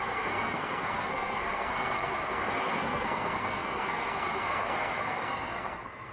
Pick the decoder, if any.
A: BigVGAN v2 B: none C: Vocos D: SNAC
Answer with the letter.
D